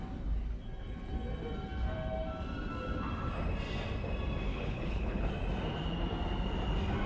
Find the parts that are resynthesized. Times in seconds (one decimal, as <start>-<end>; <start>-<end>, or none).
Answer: 4.5-5.3